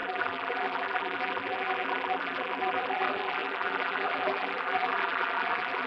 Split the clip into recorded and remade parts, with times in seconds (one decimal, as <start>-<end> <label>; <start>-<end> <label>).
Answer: 0.0-5.9 remade